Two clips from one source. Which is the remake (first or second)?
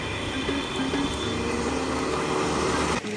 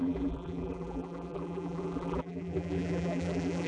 second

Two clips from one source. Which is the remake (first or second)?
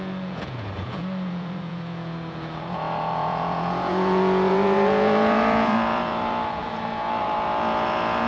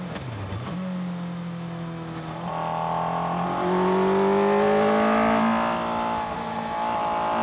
first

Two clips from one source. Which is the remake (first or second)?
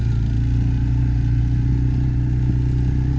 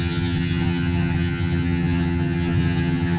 second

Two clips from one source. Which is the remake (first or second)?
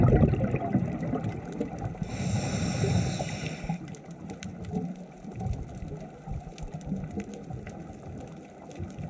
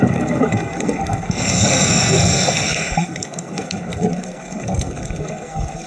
second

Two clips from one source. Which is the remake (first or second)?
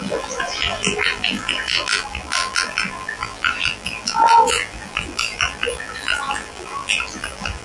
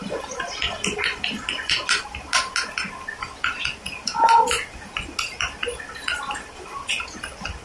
first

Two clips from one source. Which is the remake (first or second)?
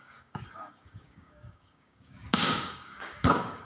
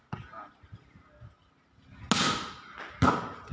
first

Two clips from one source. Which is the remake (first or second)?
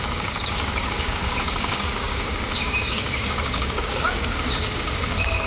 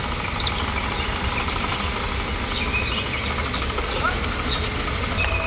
first